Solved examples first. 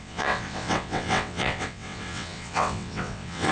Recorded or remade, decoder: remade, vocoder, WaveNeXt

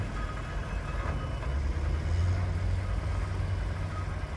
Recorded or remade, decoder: recorded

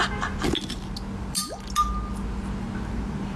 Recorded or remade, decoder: recorded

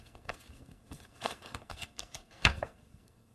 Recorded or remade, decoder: remade, codec, SNAC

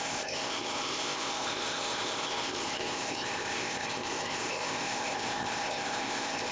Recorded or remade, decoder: remade, codec, ZipCodec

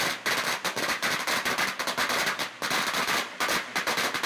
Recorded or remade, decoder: recorded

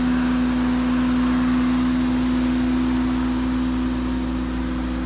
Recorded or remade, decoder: recorded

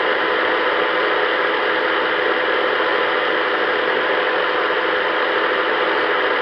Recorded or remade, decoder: recorded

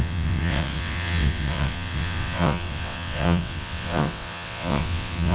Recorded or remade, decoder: remade, vocoder, WaveNeXt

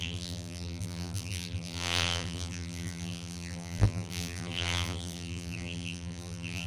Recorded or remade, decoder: remade, vocoder, BigVGAN v2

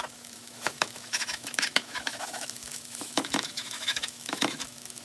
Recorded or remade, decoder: remade, autoencoder, DAC-VAE